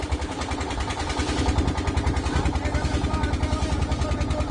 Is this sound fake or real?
real